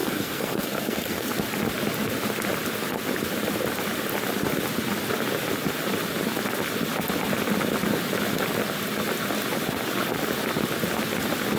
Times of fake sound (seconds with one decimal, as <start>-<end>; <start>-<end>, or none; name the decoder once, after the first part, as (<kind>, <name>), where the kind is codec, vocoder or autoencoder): 0.0-1.3 (codec, SNAC)